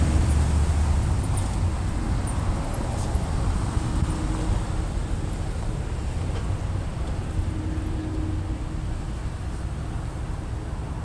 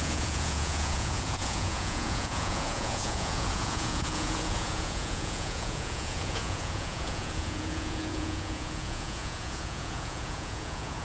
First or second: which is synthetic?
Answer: second